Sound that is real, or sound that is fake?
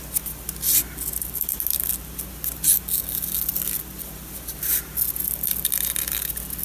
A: real